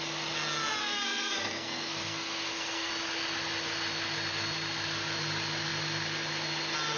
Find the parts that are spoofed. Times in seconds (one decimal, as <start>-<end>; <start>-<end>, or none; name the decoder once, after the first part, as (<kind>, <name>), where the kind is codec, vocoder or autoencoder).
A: 0.8-2.9 (codec, SNAC)